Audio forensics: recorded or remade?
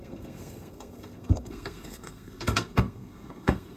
remade